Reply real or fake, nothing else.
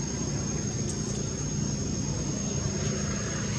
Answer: real